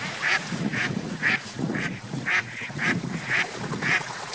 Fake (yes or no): yes